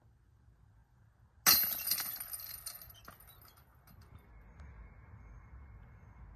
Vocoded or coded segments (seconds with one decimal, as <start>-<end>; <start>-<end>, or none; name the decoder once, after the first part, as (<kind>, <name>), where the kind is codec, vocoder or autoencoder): none